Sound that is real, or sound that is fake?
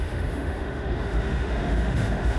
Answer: fake